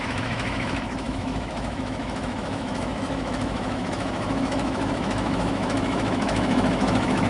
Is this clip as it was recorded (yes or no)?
no